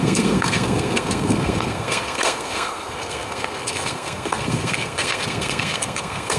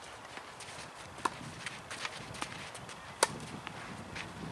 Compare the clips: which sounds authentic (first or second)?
second